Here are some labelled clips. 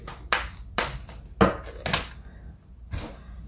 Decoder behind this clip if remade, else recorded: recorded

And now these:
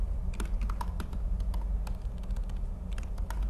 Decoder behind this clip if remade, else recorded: recorded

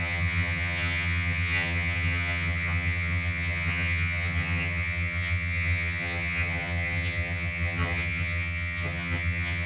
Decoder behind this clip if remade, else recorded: remade, vocoder, HiFi-GAN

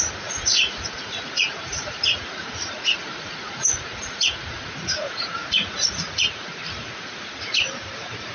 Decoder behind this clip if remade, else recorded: remade, vocoder, Vocos